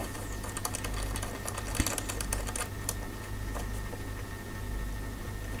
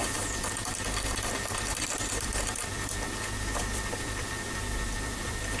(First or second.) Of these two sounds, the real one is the first